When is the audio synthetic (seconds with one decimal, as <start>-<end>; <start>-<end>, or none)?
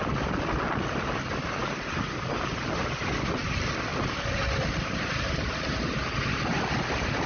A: 3.9-6.6